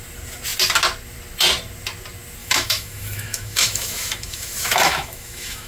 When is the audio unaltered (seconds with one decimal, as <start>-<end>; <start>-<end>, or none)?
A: 0.0-2.4